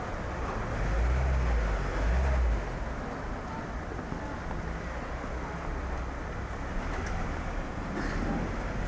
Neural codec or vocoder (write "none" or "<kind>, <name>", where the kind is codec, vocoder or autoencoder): none